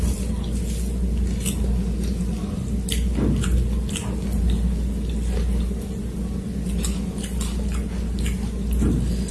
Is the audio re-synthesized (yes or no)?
no